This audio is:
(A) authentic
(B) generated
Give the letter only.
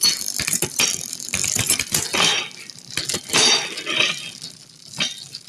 A